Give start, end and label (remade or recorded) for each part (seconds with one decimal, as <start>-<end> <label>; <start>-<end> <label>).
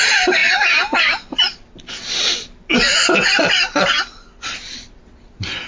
0.0-5.7 recorded